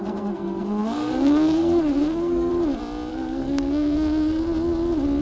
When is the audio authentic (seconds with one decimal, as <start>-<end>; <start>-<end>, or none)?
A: 2.5-3.1; 4.5-5.2